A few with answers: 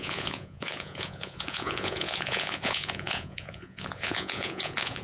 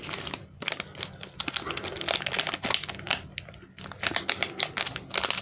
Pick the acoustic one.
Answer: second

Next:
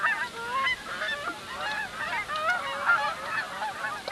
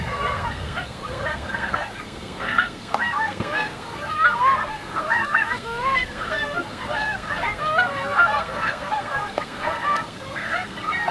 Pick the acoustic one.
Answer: first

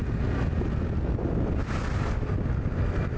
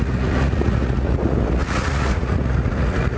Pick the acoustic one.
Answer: first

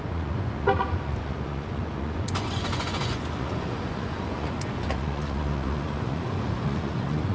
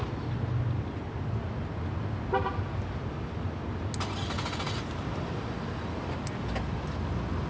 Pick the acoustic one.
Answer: second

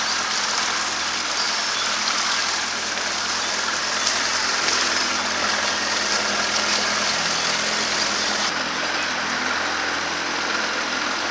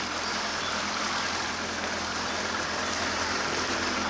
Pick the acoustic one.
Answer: first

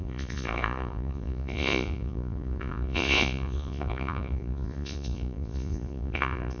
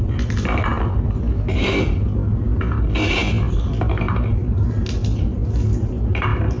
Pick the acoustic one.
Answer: second